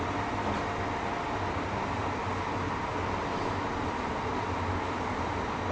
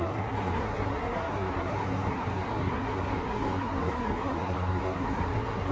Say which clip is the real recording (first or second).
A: first